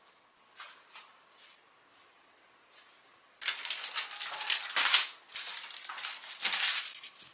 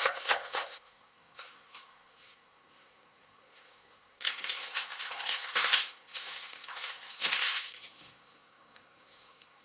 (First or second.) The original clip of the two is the first